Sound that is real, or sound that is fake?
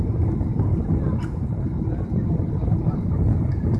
real